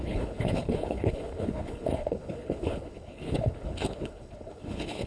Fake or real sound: fake